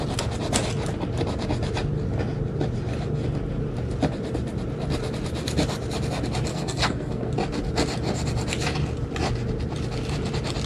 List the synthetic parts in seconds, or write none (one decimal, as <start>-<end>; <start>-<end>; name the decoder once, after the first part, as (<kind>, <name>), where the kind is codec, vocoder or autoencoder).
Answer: 6.5-7.3 (codec, SNAC)